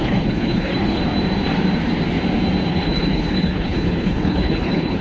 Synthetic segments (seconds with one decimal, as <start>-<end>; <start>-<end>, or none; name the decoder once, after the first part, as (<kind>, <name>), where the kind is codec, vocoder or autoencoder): 0.0-1.0 (codec, HILCodec); 2.7-5.0